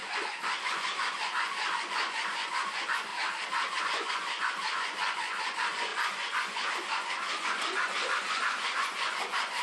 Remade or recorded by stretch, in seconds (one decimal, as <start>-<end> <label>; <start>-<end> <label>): 0.0-3.1 remade; 3.1-3.8 recorded; 3.8-9.6 remade